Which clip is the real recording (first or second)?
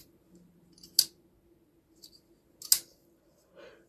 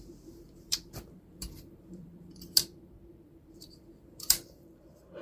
first